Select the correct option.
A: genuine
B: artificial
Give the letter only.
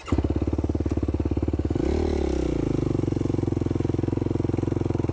A